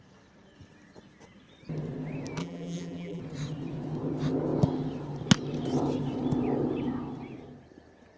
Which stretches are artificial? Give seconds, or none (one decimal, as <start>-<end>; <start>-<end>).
2.4-3.2